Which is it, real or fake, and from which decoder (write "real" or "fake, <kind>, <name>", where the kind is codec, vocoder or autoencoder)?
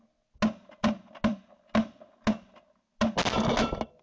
real